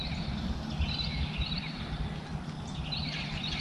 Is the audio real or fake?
real